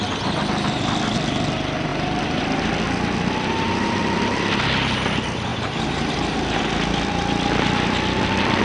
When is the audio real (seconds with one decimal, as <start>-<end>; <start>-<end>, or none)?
0.0-1.9; 2.4-5.5; 6.1-8.6